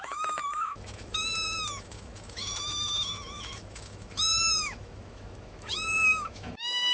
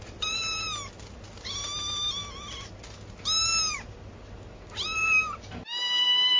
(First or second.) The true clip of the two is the second